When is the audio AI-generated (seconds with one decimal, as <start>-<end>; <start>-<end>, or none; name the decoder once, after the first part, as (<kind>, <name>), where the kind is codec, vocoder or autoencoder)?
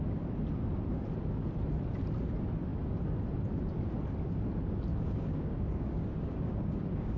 4.9-7.2 (codec, DAC)